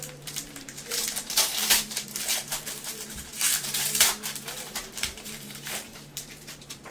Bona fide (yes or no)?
no